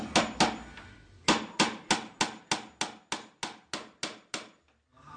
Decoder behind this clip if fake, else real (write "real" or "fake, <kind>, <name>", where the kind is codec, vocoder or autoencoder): real